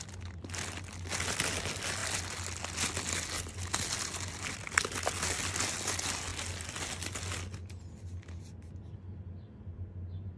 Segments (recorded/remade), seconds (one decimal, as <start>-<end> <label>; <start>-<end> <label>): 0.0-10.4 recorded